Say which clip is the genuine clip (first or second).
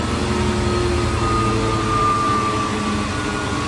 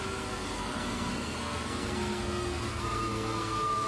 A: first